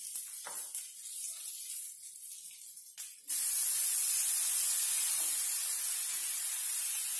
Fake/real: real